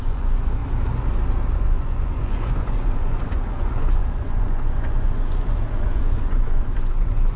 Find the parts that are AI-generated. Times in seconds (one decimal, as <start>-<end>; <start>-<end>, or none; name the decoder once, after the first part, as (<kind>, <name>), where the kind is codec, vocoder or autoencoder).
0.0-0.6 (vocoder, Vocos); 1.5-7.4